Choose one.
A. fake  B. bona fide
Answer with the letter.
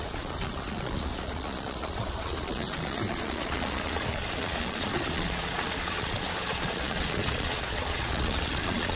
A